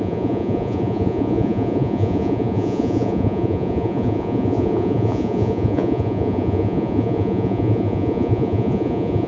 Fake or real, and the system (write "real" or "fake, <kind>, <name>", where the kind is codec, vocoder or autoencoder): fake, vocoder, Vocos